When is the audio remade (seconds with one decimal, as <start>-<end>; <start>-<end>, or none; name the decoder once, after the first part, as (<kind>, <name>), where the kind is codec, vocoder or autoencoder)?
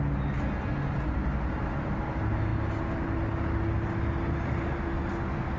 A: none